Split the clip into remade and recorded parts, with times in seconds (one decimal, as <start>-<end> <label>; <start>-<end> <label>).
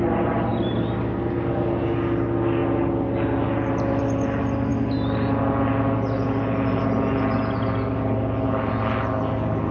0.0-9.7 recorded